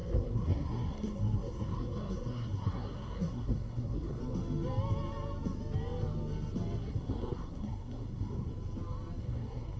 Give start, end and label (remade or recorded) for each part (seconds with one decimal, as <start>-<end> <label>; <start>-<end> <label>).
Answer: 0.0-4.2 remade; 4.2-6.8 recorded; 6.8-8.5 remade; 8.5-9.2 recorded; 9.2-9.8 remade